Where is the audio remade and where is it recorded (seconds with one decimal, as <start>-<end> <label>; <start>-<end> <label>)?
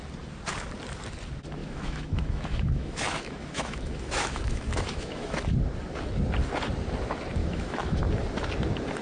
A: 0.0-1.6 recorded; 1.6-5.4 remade; 5.4-7.4 recorded; 7.4-8.0 remade; 8.0-9.0 recorded